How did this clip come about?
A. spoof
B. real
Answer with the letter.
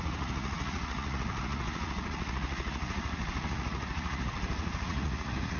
A